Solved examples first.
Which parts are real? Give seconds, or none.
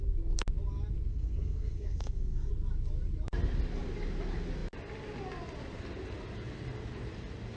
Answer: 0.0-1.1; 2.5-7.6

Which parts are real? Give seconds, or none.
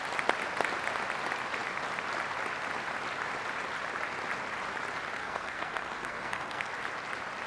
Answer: 0.0-5.2; 6.7-7.5